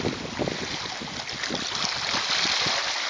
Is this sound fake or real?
real